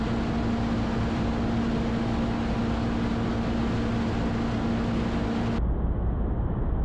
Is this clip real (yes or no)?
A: yes